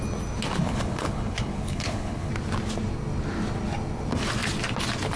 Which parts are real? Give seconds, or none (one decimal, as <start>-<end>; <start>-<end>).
0.0-0.6; 2.3-5.2

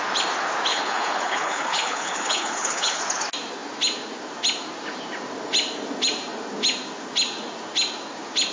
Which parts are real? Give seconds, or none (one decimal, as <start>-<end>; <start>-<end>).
0.0-0.7; 3.0-8.5

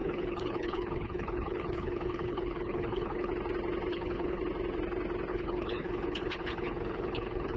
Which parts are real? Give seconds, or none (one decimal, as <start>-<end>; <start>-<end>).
3.3-3.9; 4.4-5.3

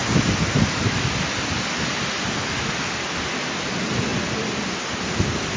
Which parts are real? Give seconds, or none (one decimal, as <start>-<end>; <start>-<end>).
0.0-5.6

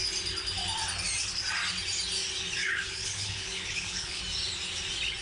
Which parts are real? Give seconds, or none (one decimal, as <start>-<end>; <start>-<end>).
0.0-2.6; 4.2-5.2

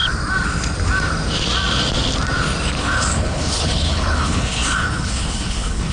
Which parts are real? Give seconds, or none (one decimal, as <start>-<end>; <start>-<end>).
0.0-2.8

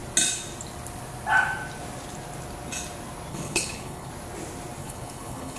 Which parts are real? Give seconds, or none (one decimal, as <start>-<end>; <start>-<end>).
0.0-3.3; 4.1-4.8